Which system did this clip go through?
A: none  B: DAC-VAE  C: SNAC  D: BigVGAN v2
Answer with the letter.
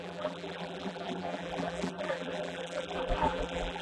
D